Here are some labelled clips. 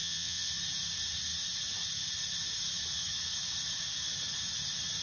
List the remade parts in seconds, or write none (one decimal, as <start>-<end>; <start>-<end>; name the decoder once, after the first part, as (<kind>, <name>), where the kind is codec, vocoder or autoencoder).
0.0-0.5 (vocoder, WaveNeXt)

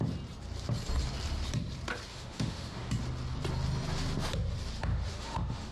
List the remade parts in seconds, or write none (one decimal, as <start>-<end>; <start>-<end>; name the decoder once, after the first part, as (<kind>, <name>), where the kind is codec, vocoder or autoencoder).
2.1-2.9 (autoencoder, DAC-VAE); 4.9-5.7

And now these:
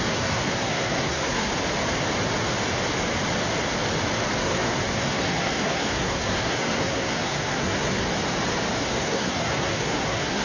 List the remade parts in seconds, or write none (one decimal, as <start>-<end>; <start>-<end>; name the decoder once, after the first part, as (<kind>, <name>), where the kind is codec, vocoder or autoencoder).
0.0-1.5 (codec, SNAC); 4.4-8.0; 8.8-10.4

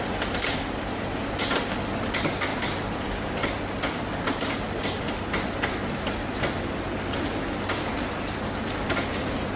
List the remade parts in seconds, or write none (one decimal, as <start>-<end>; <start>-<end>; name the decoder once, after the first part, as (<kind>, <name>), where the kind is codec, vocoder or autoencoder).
none

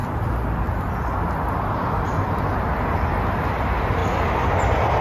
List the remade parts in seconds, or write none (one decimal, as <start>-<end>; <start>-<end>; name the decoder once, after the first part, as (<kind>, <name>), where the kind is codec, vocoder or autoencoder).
none